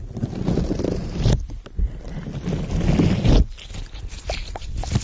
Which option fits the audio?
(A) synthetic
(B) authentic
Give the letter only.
B